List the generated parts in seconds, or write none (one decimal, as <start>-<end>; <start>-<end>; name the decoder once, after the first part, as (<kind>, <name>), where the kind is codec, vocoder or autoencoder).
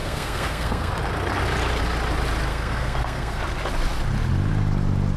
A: 0.0-0.9 (codec, SNAC); 2.5-3.4